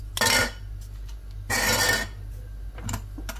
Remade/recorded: recorded